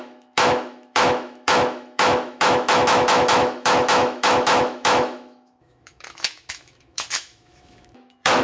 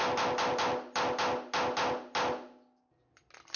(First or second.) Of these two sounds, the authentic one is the second